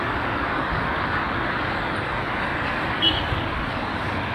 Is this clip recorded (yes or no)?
no